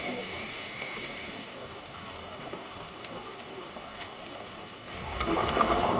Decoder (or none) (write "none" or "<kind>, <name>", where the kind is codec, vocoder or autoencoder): codec, DAC